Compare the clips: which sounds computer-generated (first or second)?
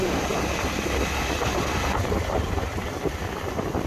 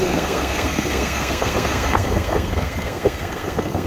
second